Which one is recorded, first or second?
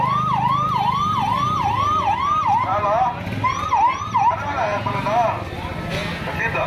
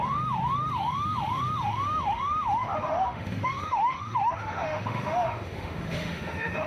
first